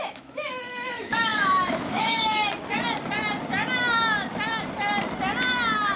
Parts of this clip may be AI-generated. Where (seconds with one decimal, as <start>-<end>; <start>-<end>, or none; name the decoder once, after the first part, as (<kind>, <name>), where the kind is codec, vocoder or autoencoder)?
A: 0.0-2.4 (autoencoder, DAC-VAE)